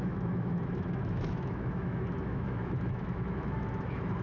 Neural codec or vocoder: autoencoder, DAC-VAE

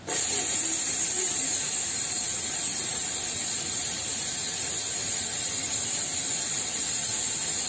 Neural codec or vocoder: none